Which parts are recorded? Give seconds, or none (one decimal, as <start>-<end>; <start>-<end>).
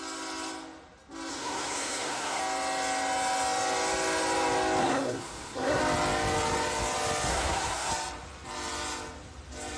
0.0-1.3; 2.4-4.8; 5.8-7.3; 7.9-9.8